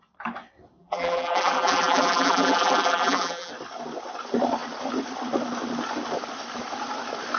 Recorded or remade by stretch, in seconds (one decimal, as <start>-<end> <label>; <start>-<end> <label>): 0.0-0.8 recorded; 0.8-3.5 remade; 3.5-7.4 recorded

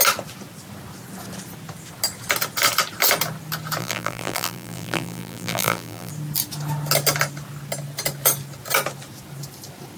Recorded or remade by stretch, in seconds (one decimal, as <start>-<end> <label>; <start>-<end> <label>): 0.0-3.8 recorded; 3.8-6.1 remade; 6.1-10.0 recorded

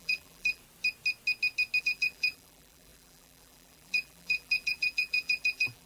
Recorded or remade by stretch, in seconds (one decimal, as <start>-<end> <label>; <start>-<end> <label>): 0.0-0.6 remade; 0.6-1.8 recorded; 1.8-5.9 remade

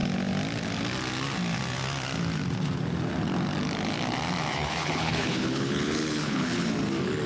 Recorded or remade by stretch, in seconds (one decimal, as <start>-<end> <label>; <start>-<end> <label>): 0.0-4.5 recorded; 4.5-6.7 remade; 6.7-7.3 recorded

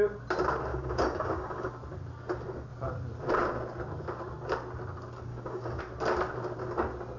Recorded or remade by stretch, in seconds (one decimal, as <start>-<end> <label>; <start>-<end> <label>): 0.0-0.7 recorded; 0.7-1.7 remade; 1.7-5.3 recorded; 5.3-5.8 remade; 5.8-7.2 recorded

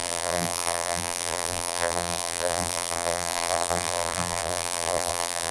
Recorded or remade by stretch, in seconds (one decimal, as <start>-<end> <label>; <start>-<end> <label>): 0.0-5.5 remade

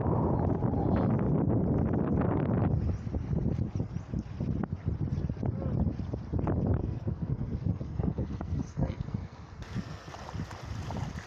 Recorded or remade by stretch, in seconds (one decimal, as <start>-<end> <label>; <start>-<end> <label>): 0.0-6.8 recorded; 6.8-10.1 remade; 10.1-11.3 recorded

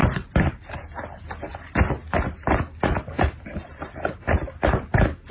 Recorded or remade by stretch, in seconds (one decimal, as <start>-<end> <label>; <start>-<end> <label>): 0.0-0.5 remade; 0.5-5.3 recorded